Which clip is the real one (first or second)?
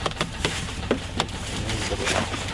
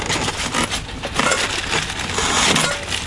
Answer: second